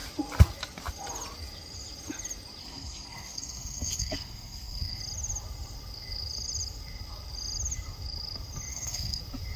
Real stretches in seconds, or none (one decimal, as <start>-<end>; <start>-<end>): 0.0-2.6; 5.0-8.7; 9.2-9.6